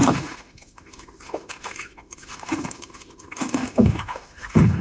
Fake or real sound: fake